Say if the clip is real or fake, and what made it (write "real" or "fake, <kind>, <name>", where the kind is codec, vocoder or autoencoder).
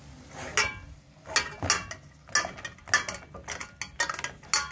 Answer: real